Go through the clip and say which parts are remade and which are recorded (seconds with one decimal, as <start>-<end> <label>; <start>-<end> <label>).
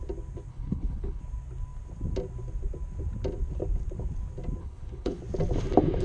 0.0-0.5 recorded; 0.5-1.2 remade; 1.2-4.6 recorded; 4.6-5.2 remade; 5.2-6.0 recorded